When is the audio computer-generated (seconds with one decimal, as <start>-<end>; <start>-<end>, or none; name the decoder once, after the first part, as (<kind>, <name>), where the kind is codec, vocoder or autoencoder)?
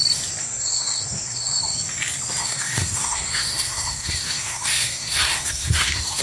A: 0.4-1.6 (codec, SNAC); 2.4-6.2